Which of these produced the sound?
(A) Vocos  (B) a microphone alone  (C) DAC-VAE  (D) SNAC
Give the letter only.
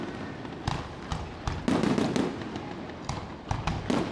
B